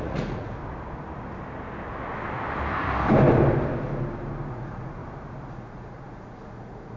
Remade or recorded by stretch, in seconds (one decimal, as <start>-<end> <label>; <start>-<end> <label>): 0.0-0.6 remade; 0.6-4.5 recorded; 4.5-5.0 remade; 5.0-5.5 recorded; 5.5-7.0 remade